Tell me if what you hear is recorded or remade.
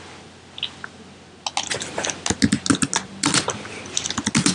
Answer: recorded